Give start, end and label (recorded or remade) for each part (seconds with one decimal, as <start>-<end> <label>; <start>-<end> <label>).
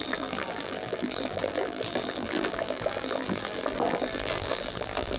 0.0-5.2 remade